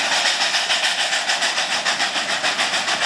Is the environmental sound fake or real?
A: real